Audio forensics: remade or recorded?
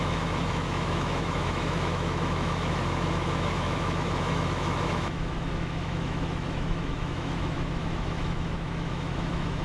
remade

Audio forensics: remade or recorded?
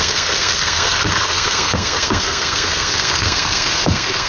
remade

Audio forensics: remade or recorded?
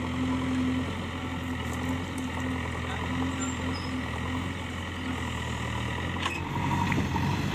recorded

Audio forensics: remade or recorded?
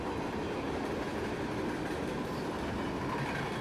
recorded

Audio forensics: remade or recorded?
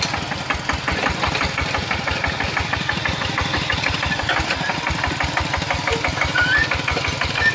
recorded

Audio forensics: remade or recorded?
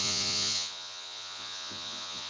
remade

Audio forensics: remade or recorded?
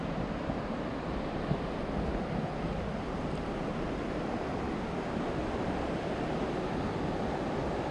recorded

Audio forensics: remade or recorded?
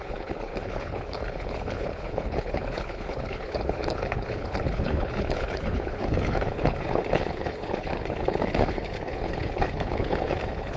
remade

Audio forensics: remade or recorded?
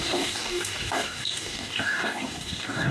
remade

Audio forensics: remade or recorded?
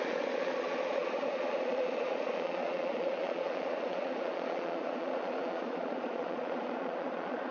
remade